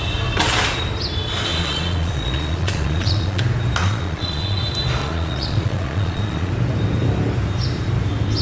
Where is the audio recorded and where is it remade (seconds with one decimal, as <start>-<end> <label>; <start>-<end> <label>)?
0.0-1.5 recorded; 1.5-3.4 remade; 3.4-3.8 recorded; 3.8-4.6 remade; 4.6-5.0 recorded; 5.0-6.5 remade; 6.5-8.4 recorded

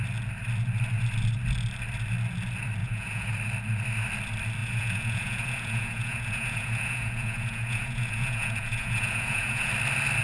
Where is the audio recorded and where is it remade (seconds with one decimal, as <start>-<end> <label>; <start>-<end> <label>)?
0.0-2.8 recorded; 2.8-3.3 remade; 3.3-4.6 recorded; 4.6-9.7 remade; 9.7-10.2 recorded